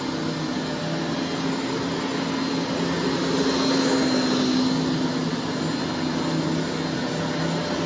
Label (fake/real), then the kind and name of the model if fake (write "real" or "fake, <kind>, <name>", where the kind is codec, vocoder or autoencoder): real